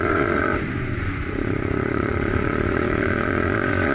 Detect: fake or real fake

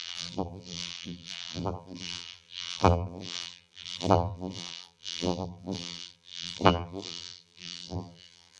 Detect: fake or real fake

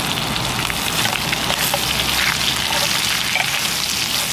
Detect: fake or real real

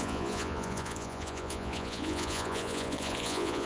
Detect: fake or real fake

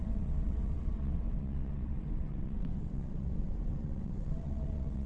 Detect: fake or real fake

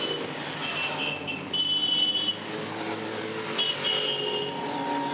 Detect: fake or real real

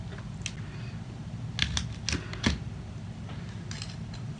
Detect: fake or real real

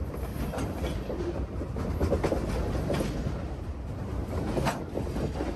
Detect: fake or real real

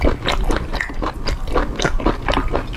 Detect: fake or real fake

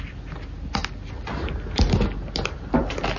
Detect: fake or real real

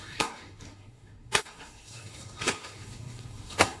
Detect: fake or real fake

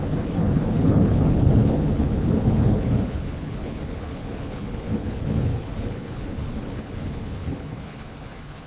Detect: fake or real fake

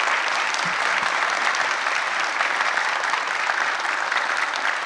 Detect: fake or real real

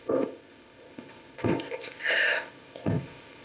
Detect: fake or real fake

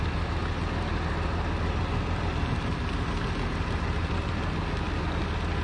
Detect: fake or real real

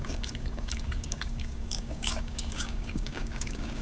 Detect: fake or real fake